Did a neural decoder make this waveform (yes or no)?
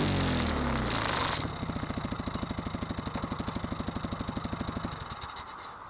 no